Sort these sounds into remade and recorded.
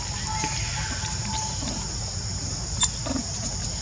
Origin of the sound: recorded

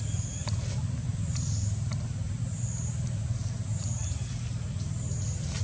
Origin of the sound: recorded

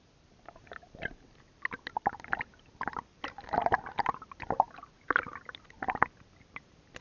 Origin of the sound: remade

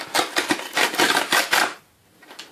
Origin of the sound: recorded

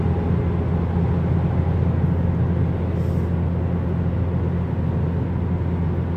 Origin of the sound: recorded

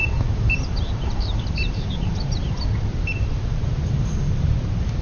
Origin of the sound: remade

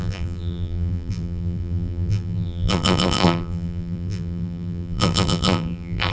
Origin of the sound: remade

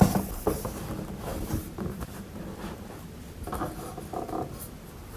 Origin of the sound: recorded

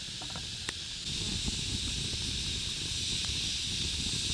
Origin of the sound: recorded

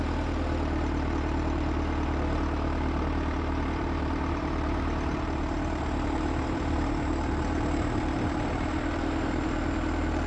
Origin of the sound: remade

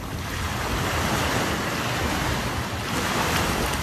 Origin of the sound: recorded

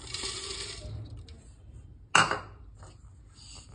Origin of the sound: recorded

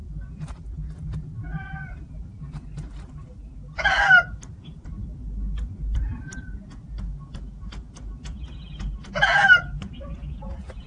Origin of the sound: recorded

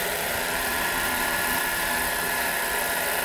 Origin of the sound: remade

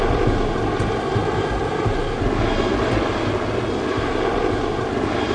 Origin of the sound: recorded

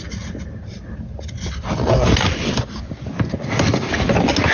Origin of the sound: recorded